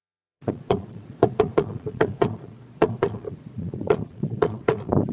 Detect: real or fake fake